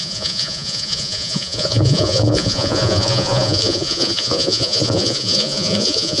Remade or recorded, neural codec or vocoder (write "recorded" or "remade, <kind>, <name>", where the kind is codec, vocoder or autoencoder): remade, vocoder, Vocos